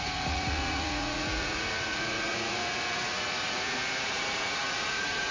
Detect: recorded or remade remade